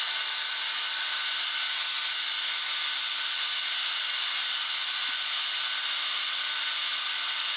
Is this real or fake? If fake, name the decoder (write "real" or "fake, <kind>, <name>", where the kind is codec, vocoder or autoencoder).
real